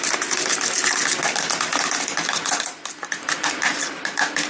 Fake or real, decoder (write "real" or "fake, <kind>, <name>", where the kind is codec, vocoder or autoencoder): real